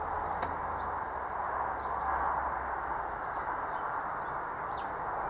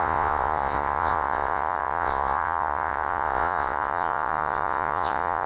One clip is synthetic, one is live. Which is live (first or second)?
first